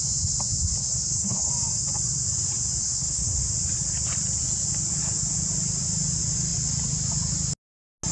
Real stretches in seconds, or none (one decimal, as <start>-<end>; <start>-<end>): 0.0-0.8; 1.5-2.8; 3.4-8.1